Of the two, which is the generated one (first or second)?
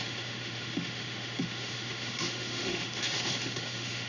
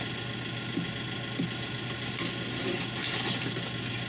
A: first